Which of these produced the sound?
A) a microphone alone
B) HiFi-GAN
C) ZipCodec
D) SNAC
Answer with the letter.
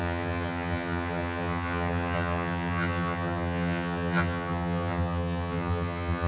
B